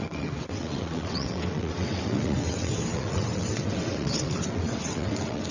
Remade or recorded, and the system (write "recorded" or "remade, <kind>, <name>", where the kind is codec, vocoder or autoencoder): remade, vocoder, WaveNeXt